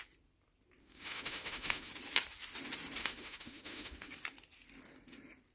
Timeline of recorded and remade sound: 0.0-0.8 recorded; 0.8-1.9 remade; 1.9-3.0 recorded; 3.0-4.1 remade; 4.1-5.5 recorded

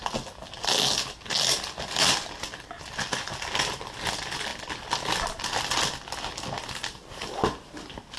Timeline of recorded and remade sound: 0.0-8.2 recorded

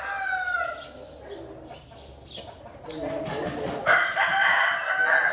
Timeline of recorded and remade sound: 0.0-5.3 recorded